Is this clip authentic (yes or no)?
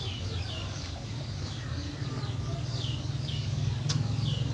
no